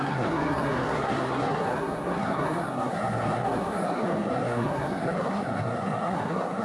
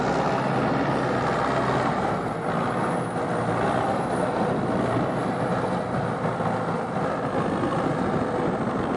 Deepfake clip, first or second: first